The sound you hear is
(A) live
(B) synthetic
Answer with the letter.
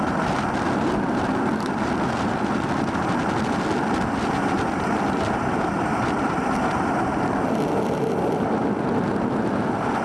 B